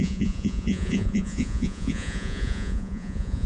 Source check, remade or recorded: remade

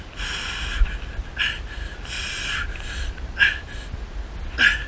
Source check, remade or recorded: recorded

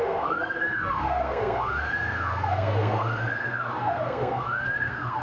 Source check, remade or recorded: remade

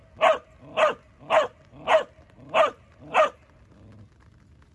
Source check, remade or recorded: recorded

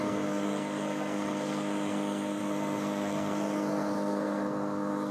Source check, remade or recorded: remade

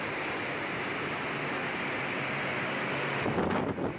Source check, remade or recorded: recorded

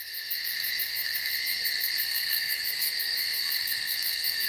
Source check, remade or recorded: remade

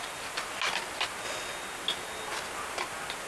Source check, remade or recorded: recorded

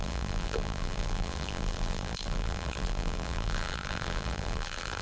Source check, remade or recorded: remade